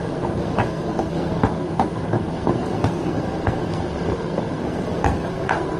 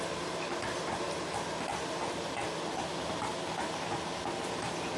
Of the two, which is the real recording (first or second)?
second